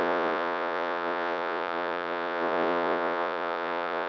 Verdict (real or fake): fake